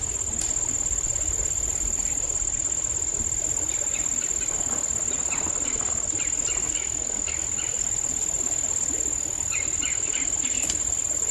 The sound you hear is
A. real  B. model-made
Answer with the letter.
A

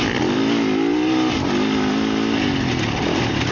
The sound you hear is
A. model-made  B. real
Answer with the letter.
B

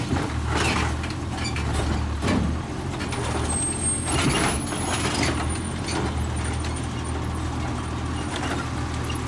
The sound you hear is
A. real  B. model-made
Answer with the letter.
A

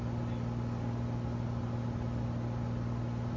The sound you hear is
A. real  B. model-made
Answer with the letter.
A